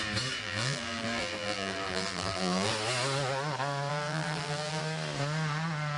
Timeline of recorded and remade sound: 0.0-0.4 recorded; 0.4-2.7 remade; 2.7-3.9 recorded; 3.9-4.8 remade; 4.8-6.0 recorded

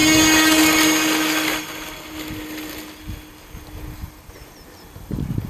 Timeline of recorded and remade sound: 0.0-5.5 recorded

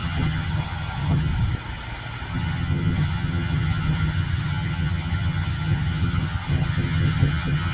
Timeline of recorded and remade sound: 0.0-1.3 remade; 1.3-2.3 recorded; 2.3-7.7 remade

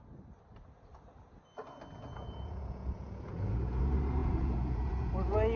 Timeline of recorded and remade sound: 0.0-2.1 recorded; 2.1-3.8 remade; 3.8-4.2 recorded; 4.2-5.1 remade; 5.1-5.6 recorded

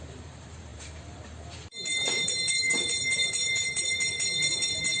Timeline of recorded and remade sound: 0.0-5.0 remade

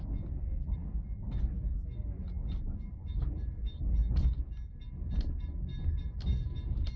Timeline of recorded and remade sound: 0.0-7.0 recorded

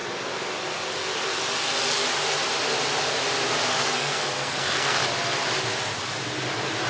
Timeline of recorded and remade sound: 0.0-3.8 recorded; 3.8-5.0 remade; 5.0-6.9 recorded

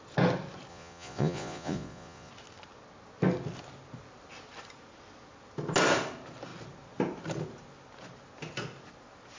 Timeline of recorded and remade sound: 0.0-0.7 recorded; 0.7-2.3 remade; 2.3-9.4 recorded